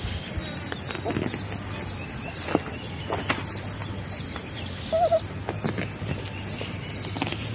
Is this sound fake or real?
real